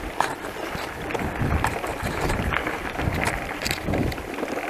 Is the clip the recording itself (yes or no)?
no